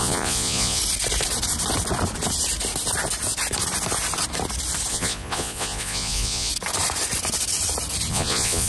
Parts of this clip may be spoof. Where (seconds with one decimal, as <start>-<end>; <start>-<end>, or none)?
0.0-0.8; 4.9-6.5; 8.1-8.7